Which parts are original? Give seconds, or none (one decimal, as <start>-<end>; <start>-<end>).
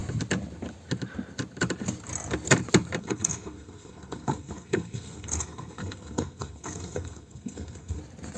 0.0-3.0; 8.0-8.4